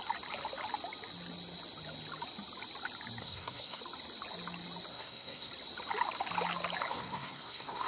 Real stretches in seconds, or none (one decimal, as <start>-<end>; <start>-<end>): 0.0-3.2; 3.8-4.9; 5.5-6.9